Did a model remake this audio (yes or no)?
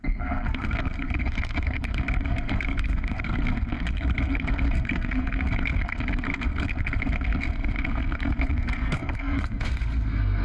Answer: yes